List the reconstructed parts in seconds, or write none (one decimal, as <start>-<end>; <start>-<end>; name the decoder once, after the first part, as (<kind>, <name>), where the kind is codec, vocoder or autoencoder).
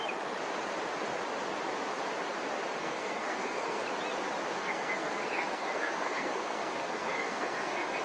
2.8-3.8 (codec, SNAC); 4.6-8.0